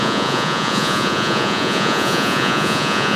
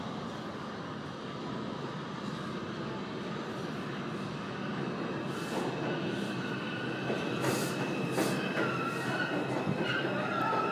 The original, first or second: second